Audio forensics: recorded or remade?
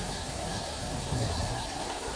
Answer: remade